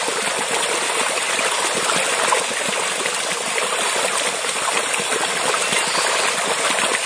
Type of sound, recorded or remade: recorded